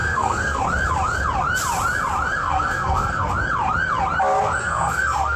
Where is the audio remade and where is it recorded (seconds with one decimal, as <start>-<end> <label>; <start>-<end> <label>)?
0.0-0.6 remade; 0.6-2.4 recorded; 2.4-3.3 remade; 3.3-4.6 recorded; 4.6-5.4 remade